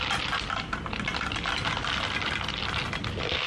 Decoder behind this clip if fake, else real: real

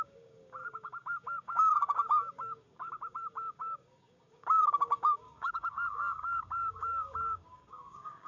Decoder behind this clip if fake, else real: fake, codec, DAC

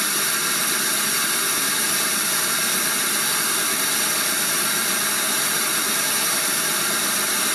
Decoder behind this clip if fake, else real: real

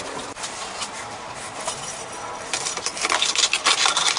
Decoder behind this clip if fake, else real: real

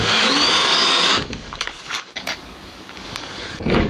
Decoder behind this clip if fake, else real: fake, codec, DAC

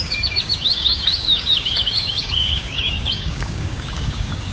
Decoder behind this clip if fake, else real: fake, codec, DAC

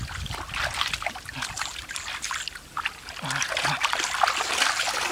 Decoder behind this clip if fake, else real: real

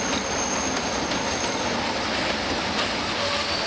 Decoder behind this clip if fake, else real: real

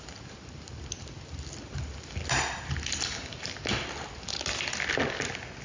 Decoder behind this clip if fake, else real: real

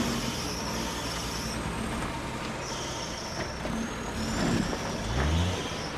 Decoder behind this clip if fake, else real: real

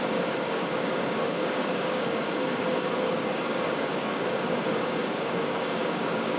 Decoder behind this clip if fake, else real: fake, codec, DAC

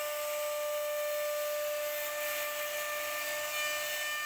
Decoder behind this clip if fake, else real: real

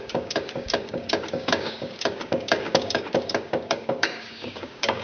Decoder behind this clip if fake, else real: fake, codec, DAC